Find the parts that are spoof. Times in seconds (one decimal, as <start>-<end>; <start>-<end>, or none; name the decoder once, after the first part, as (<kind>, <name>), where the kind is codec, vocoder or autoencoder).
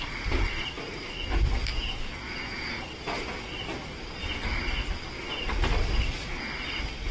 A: 1.7-3.5 (vocoder, Vocos)